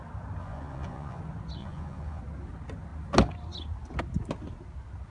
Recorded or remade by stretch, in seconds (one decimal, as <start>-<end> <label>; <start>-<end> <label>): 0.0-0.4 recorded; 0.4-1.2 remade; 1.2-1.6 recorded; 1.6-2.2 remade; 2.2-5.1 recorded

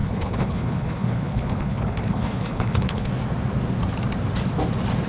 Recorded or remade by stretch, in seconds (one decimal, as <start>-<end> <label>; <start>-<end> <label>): 0.0-3.1 remade; 3.1-5.1 recorded

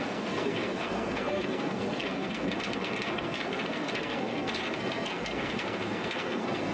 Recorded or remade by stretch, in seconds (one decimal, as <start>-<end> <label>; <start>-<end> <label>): 0.0-6.7 remade

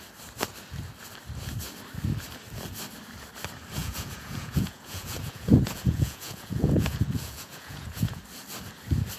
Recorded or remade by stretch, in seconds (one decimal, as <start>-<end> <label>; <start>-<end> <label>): 0.0-3.8 recorded; 3.8-8.2 remade; 8.2-9.2 recorded